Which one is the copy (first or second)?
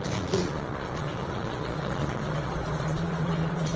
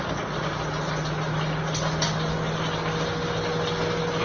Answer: first